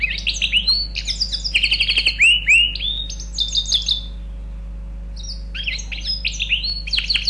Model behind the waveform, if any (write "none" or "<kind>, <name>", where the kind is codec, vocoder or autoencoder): none